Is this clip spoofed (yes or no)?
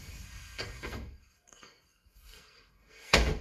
yes